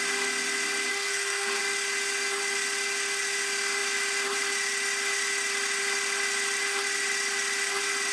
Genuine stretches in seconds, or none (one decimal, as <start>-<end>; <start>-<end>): 0.0-0.9; 1.6-8.1